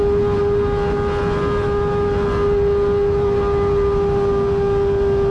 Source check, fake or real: real